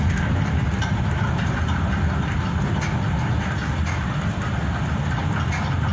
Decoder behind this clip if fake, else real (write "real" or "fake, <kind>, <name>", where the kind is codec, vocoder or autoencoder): real